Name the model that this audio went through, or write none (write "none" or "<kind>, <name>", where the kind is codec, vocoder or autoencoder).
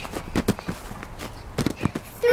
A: none